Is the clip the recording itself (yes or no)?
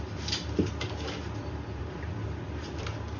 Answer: no